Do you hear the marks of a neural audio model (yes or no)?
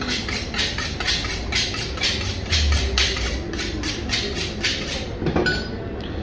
no